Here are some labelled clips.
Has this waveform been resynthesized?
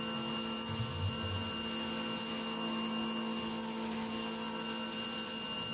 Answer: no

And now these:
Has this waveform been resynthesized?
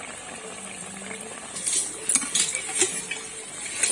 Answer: no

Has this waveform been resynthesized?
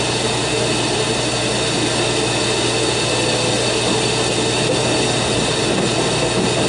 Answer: no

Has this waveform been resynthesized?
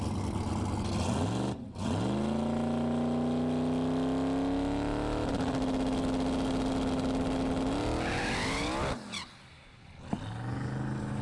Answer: no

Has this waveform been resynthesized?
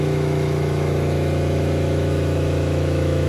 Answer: yes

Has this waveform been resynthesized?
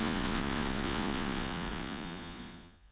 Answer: yes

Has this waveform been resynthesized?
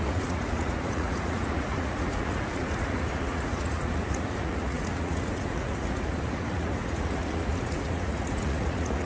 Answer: yes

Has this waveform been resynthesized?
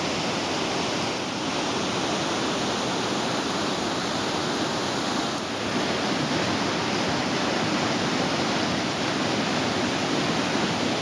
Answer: no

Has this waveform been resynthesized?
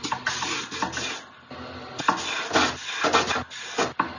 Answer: no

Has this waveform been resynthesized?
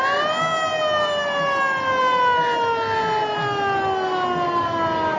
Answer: no